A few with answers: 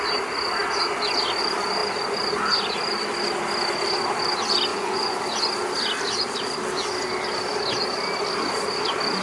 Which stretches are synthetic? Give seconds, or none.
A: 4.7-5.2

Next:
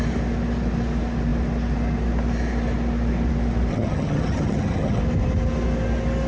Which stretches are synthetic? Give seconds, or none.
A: 3.7-5.0